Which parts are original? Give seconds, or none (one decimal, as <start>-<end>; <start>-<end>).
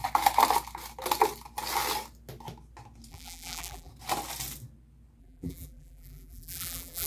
0.0-3.1; 3.9-5.2